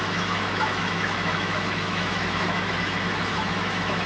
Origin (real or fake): fake